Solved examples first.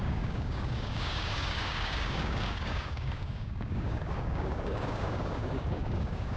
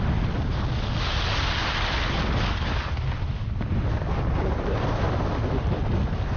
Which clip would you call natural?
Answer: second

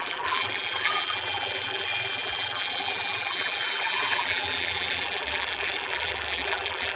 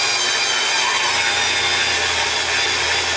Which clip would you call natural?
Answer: second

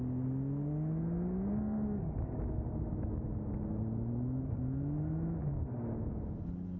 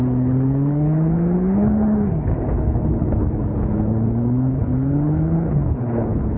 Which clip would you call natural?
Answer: first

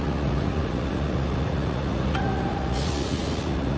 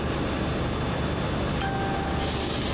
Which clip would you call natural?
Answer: second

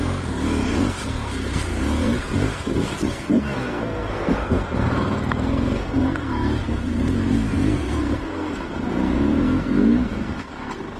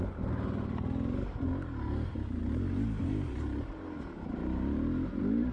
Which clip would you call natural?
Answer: second